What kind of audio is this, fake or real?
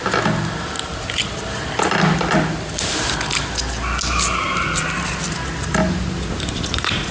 real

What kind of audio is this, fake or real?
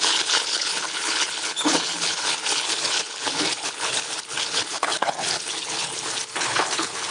fake